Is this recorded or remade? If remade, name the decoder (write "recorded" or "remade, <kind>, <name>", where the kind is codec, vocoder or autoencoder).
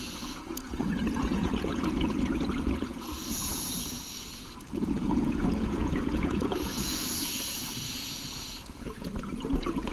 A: remade, vocoder, Vocos